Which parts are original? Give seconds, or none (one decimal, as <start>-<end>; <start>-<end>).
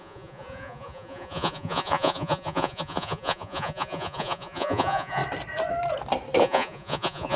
5.2-6.4